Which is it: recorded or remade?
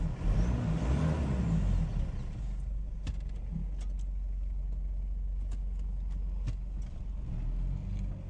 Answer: recorded